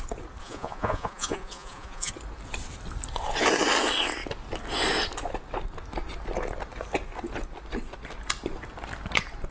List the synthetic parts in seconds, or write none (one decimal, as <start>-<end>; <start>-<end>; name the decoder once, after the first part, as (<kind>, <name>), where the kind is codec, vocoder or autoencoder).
0.4-2.1 (vocoder, Vocos)